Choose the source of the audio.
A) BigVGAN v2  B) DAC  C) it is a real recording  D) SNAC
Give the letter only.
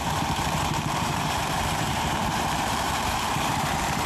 A